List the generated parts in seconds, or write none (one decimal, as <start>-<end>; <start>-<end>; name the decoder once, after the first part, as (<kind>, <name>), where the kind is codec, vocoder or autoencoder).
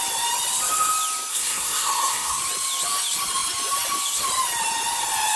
1.3-2.4 (codec, SNAC)